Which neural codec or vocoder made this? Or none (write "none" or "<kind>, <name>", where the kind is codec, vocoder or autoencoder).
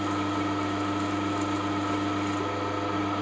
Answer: none